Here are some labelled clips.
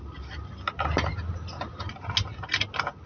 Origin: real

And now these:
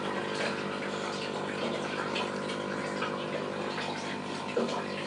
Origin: real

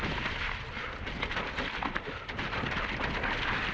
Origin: fake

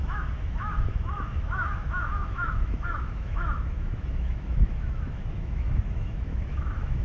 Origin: fake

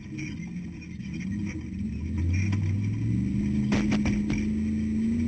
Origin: real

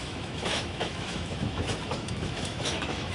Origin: fake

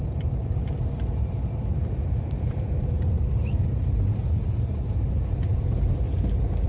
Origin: fake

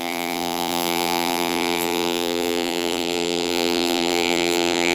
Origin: fake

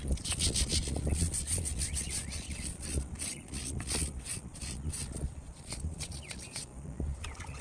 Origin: fake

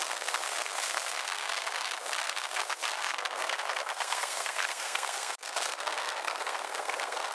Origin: fake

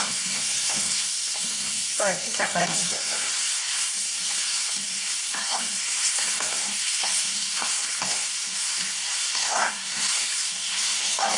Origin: fake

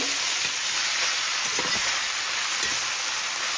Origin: real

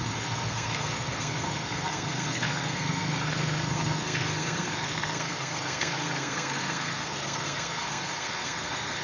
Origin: fake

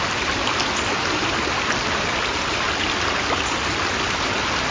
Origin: real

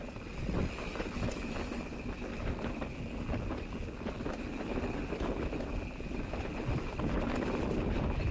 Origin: real